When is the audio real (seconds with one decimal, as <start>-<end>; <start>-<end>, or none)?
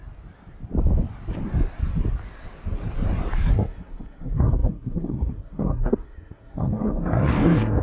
0.0-3.5